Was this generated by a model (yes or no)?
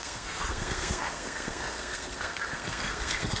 yes